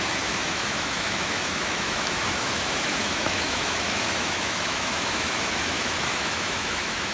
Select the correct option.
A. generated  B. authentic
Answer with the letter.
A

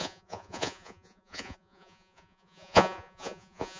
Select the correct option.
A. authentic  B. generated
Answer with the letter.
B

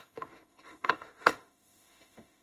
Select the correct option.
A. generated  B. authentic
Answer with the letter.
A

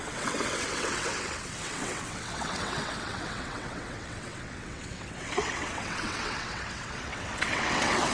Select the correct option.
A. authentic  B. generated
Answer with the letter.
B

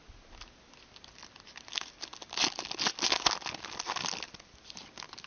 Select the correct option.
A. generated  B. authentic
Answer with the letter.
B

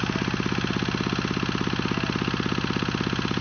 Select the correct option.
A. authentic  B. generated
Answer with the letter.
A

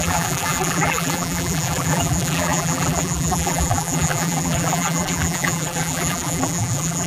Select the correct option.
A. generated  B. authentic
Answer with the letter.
A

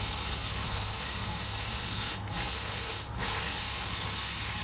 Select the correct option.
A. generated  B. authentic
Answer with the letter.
A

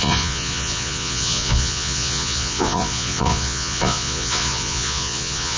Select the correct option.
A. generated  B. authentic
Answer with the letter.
A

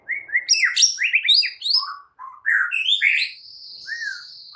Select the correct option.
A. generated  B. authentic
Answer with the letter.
B